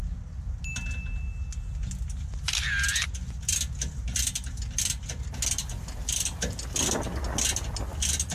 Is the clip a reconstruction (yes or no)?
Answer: no